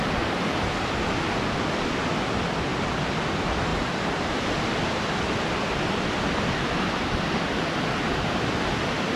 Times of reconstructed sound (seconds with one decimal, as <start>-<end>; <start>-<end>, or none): none